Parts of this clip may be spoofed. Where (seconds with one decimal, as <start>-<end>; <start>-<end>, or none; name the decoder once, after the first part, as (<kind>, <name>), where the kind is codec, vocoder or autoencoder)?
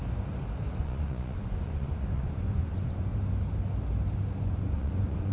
0.8-3.1 (vocoder, Vocos); 4.4-5.3